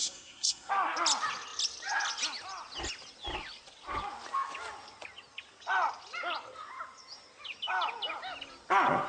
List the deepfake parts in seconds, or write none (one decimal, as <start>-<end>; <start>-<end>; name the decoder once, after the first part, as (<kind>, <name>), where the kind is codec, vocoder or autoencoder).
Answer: 0.0-0.7 (codec, SNAC)